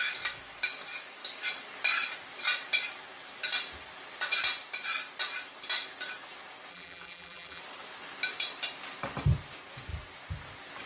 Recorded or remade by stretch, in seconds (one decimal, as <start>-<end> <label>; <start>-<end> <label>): 0.0-6.7 recorded; 6.7-7.6 remade; 7.6-10.9 recorded